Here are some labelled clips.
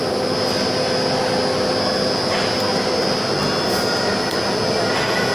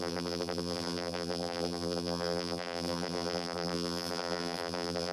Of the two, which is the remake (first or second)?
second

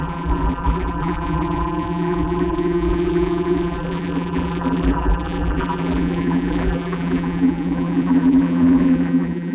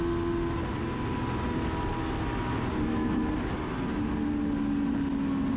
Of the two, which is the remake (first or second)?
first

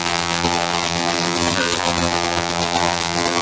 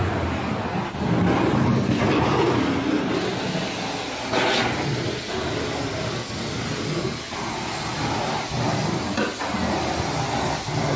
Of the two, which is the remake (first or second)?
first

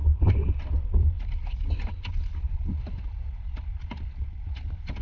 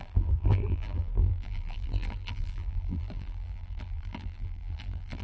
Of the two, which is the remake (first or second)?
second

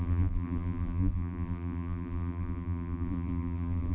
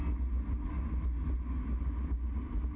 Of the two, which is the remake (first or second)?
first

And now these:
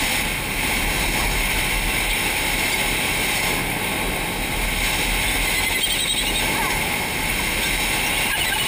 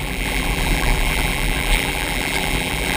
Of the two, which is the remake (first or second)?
second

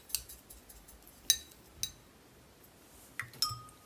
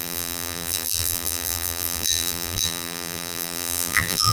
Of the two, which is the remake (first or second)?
second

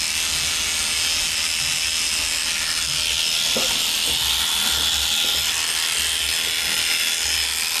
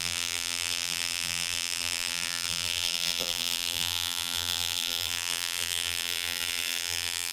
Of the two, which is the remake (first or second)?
second